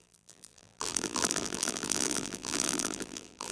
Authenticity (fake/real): fake